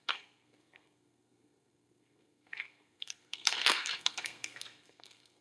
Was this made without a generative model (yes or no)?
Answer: no